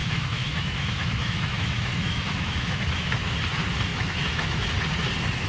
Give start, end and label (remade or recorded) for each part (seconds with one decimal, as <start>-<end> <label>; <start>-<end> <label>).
0.0-3.3 remade; 3.3-3.9 recorded; 3.9-4.7 remade; 4.7-5.5 recorded